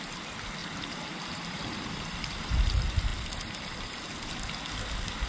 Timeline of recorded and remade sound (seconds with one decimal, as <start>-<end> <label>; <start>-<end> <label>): 0.0-0.6 recorded; 0.6-2.7 remade; 2.7-3.1 recorded; 3.1-4.3 remade; 4.3-5.3 recorded